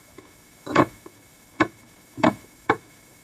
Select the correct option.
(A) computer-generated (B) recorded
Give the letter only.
A